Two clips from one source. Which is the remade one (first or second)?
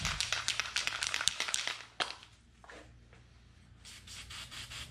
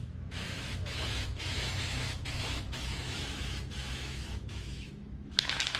second